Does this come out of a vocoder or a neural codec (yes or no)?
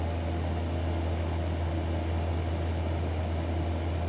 no